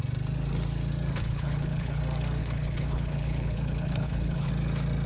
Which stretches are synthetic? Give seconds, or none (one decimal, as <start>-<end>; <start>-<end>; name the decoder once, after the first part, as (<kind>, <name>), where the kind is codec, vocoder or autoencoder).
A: 1.1-2.0 (codec, HILCodec); 2.4-4.5